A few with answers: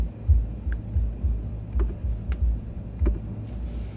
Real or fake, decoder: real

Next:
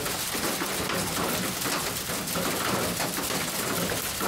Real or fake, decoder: real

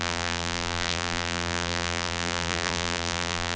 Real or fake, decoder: fake, vocoder, BigVGAN v2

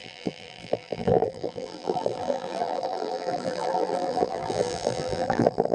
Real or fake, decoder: fake, vocoder, BigVGAN v2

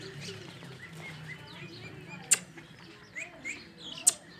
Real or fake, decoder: real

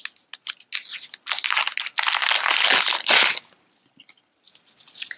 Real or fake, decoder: real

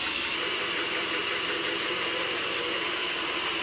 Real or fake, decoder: fake, vocoder, BigVGAN v2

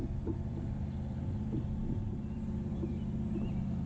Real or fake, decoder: fake, vocoder, BigVGAN v2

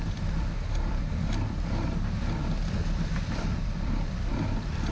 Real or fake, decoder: fake, vocoder, BigVGAN v2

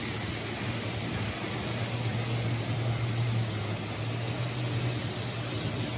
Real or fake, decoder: real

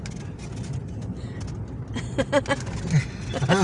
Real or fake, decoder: real